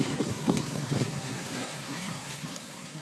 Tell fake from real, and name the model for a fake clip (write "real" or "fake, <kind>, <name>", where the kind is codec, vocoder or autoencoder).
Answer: fake, codec, SNAC